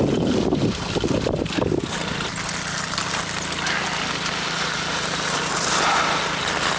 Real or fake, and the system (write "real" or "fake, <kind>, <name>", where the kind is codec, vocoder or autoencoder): real